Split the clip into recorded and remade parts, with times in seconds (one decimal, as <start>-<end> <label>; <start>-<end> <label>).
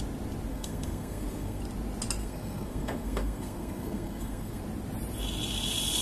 0.0-0.5 recorded; 0.5-1.6 remade; 1.6-2.2 recorded; 2.2-4.6 remade; 4.6-6.0 recorded